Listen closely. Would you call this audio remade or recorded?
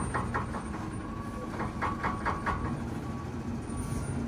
recorded